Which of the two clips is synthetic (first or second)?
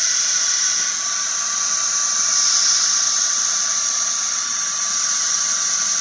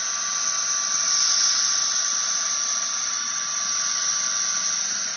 first